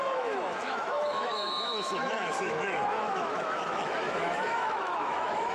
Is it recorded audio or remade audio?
remade